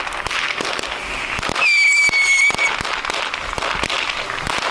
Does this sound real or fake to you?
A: real